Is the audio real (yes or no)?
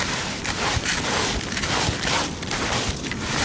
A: no